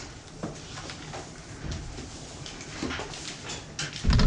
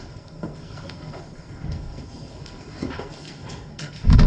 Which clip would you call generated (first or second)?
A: second